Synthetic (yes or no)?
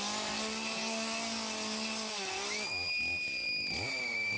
no